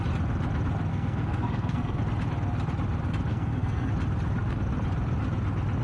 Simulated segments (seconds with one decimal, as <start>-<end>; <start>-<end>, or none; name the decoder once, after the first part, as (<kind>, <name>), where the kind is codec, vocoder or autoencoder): 0.9-2.0 (codec, SNAC); 3.3-3.9